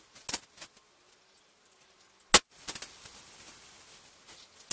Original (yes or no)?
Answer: yes